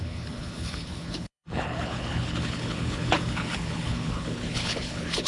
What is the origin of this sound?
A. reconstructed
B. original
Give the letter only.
A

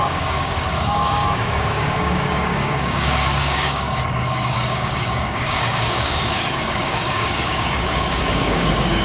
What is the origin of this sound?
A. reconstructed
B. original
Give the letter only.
A